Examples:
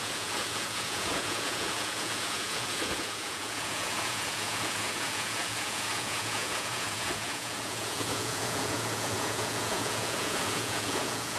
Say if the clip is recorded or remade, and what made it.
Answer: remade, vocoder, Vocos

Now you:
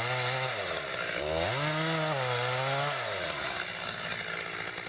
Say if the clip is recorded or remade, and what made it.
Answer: recorded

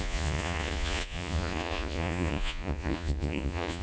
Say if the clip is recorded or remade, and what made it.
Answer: remade, vocoder, Vocos